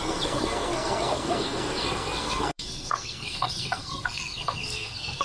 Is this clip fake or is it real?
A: fake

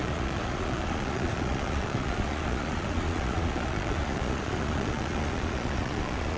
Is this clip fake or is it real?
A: fake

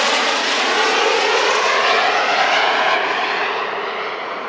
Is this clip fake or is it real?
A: fake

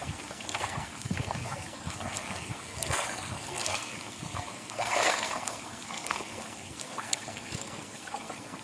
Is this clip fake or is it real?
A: fake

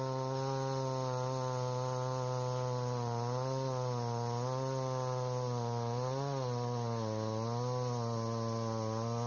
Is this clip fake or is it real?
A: real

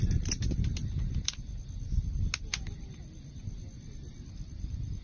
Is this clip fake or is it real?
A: real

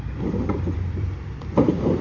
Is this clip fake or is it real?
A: fake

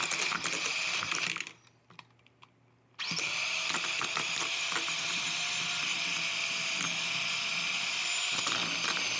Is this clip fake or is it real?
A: real